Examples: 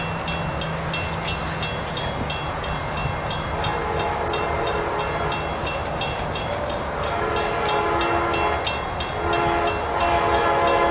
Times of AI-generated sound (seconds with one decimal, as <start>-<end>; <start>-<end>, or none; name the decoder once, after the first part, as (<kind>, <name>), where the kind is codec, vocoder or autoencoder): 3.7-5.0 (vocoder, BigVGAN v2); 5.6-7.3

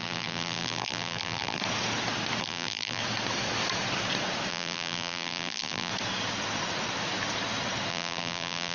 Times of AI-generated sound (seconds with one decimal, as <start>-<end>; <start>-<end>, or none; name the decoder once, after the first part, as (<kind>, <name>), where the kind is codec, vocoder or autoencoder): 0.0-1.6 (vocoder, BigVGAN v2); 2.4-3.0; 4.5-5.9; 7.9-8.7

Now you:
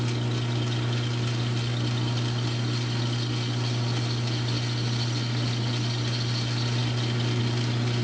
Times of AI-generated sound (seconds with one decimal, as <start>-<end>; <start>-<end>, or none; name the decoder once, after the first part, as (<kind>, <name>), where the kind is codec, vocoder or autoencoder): none

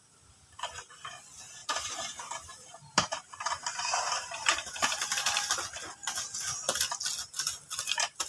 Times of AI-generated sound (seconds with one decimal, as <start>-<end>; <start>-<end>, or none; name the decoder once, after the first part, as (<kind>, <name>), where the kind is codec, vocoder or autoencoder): 1.6-5.0 (vocoder, BigVGAN v2)

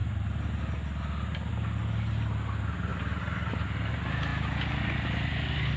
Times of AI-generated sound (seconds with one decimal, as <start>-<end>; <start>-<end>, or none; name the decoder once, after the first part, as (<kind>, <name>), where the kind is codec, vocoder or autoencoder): none

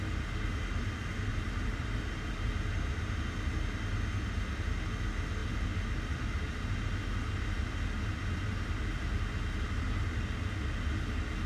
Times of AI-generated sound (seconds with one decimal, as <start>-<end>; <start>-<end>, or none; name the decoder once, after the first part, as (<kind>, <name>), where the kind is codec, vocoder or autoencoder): 1.3-2.5 (vocoder, BigVGAN v2)

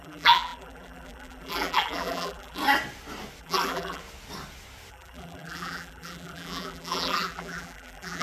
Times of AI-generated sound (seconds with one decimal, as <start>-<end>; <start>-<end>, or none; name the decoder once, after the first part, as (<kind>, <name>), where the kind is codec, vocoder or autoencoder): 0.0-2.6 (vocoder, BigVGAN v2); 3.4-4.0; 4.9-8.2